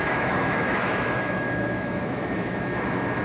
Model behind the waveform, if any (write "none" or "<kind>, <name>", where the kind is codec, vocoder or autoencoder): autoencoder, DAC-VAE